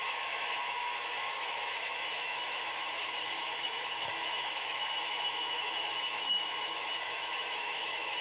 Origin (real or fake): fake